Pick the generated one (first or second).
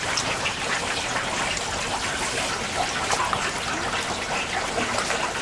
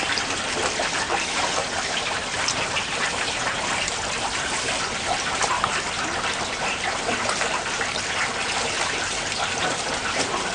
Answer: second